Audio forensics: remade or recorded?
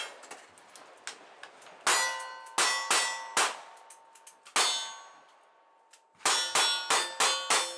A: recorded